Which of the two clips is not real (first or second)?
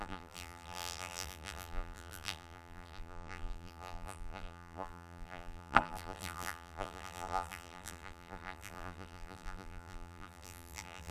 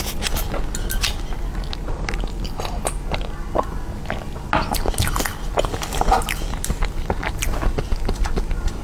first